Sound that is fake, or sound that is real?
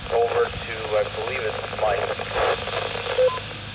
real